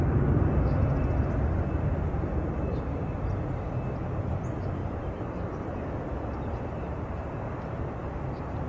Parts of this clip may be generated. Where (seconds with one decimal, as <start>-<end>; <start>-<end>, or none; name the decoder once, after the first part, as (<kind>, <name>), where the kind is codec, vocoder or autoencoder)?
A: 4.8-5.7 (vocoder, BigVGAN v2); 6.9-8.0